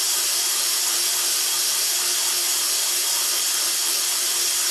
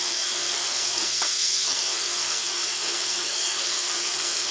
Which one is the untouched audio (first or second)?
first